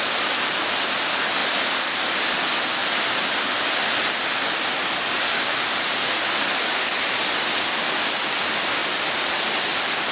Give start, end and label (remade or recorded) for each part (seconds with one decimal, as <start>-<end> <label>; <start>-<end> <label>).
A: 0.0-10.1 recorded